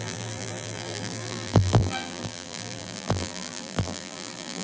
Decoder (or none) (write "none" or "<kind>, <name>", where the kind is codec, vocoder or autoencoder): vocoder, BigVGAN v2